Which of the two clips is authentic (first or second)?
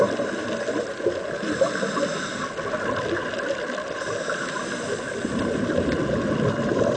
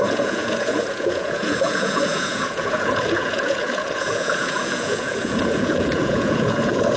first